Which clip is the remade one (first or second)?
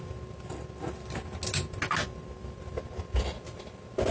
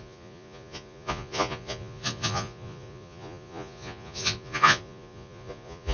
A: second